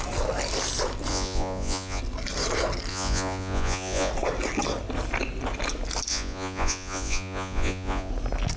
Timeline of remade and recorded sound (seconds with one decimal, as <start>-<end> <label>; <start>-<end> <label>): 0.0-1.1 recorded; 1.1-2.0 remade; 2.0-2.9 recorded; 2.9-4.1 remade; 4.1-6.1 recorded; 6.1-8.1 remade; 8.1-8.6 recorded